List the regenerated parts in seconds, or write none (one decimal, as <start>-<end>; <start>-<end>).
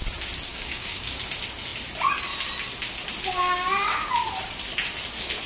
0.5-1.2; 3.3-4.1